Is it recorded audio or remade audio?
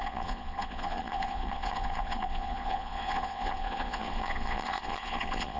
remade